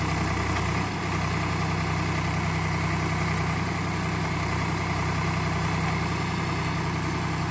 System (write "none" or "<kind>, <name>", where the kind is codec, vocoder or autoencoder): none